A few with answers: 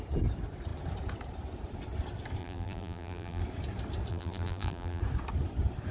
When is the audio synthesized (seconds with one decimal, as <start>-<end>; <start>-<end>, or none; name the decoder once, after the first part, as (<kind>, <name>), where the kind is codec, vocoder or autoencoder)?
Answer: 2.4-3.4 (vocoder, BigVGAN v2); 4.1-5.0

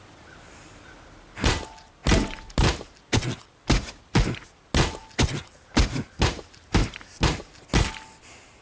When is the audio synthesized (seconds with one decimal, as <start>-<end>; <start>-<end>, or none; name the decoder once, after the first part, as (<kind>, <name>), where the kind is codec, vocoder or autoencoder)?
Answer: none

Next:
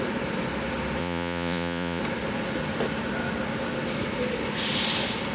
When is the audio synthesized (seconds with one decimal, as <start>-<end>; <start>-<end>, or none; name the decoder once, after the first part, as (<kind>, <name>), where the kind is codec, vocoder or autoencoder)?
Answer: 1.0-2.0 (vocoder, Vocos)

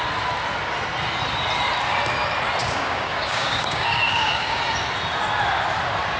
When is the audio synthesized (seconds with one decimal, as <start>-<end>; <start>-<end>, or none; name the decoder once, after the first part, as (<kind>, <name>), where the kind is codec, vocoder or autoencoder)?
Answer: 2.6-4.6 (codec, DAC)

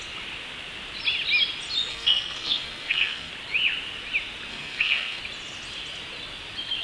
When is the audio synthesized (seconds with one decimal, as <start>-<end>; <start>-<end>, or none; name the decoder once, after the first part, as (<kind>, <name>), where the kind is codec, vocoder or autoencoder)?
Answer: 1.9-3.3 (codec, SNAC); 4.5-5.2

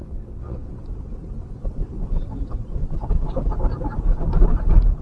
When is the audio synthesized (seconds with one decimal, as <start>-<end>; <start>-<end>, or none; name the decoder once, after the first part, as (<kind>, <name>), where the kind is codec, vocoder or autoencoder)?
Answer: 0.0-0.7 (vocoder, WaveNeXt)

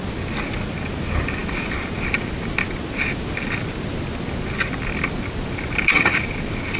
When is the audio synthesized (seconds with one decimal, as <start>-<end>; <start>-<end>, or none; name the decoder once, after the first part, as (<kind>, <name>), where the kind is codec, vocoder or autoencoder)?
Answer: none